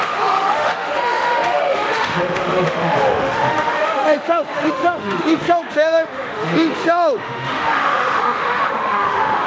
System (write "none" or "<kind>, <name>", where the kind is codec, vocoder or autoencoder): autoencoder, DAC-VAE